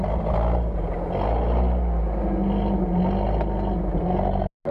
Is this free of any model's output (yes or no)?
yes